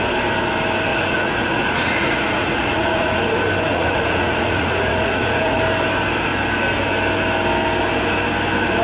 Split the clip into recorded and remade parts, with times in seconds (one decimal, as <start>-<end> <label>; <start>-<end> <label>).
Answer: 0.0-0.9 recorded; 0.9-3.2 remade; 3.2-3.7 recorded; 3.7-5.6 remade; 5.6-8.8 recorded